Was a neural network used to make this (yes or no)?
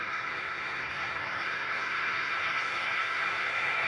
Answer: yes